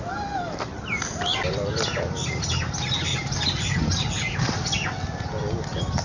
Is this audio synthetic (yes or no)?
no